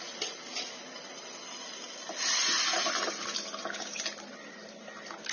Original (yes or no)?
yes